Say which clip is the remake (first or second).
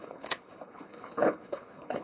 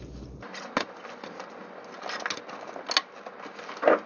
first